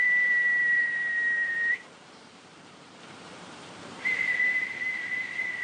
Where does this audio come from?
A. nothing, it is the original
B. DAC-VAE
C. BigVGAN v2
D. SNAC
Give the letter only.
C